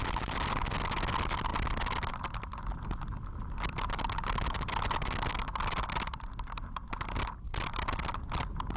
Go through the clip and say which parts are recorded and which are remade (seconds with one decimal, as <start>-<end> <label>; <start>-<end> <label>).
0.0-8.8 recorded